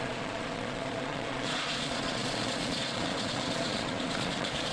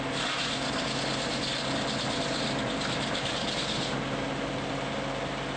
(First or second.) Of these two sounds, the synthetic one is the first